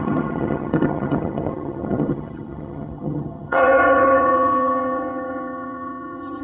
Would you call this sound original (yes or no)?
no